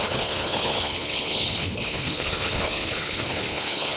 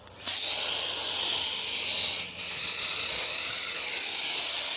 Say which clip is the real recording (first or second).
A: second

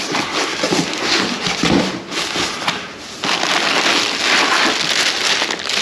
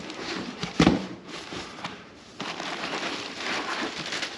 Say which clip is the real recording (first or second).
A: first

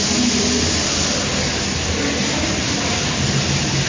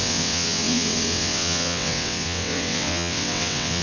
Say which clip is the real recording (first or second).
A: first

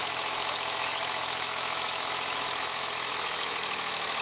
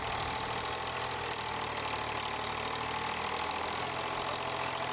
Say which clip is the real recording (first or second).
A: second